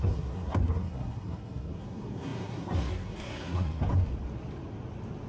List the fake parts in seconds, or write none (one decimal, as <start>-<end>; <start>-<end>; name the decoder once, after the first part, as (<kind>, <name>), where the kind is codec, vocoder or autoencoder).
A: 0.0-3.9 (codec, SNAC)